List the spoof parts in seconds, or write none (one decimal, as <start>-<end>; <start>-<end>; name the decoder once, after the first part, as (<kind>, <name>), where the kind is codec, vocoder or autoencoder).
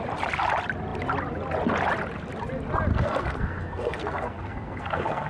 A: 2.9-5.3 (codec, SNAC)